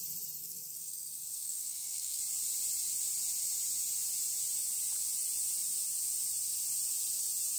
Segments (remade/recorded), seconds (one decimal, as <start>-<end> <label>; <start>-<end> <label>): 0.0-0.4 recorded; 0.4-2.2 remade; 2.2-7.6 recorded